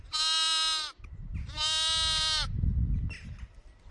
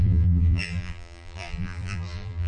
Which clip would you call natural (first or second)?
first